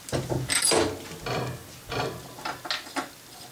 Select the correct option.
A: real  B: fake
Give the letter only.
A